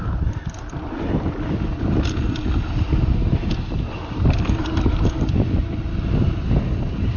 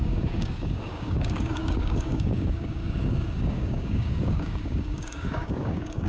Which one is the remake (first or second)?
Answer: second